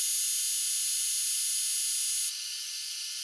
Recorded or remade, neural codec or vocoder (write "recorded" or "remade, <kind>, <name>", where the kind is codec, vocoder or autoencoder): recorded